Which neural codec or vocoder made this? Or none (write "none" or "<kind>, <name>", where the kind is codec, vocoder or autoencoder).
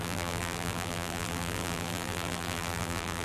vocoder, BigVGAN v2